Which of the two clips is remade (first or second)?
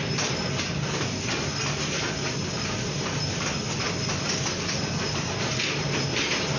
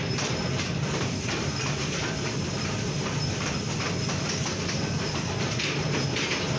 second